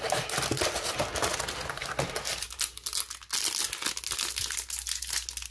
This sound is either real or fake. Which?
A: real